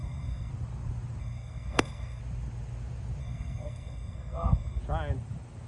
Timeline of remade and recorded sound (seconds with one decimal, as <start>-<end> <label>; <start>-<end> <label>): 0.0-0.5 remade; 0.5-1.2 recorded; 1.2-2.2 remade; 2.2-3.2 recorded; 3.2-4.8 remade; 4.8-5.7 recorded